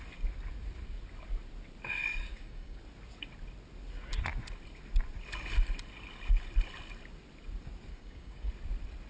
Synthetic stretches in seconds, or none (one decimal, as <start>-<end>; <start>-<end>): 2.3-2.8; 7.9-8.5